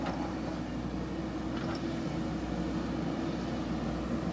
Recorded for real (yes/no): yes